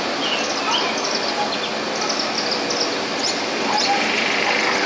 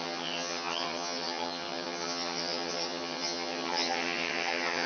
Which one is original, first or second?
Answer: first